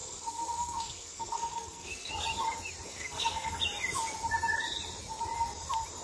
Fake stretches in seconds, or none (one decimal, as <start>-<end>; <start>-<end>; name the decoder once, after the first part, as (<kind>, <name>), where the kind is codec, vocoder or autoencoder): 0.0-2.1 (codec, SNAC); 2.9-3.5